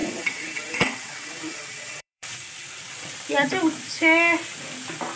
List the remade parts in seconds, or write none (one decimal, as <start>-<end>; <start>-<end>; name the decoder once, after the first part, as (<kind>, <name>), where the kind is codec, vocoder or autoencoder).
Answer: 0.0-3.1 (vocoder, WaveNeXt)